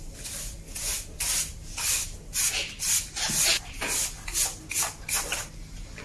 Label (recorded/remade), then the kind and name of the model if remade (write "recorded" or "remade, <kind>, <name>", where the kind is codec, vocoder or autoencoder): recorded